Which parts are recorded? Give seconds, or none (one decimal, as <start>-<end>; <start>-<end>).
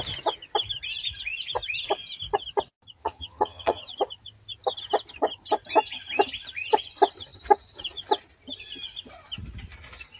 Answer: 0.0-3.0; 3.8-10.2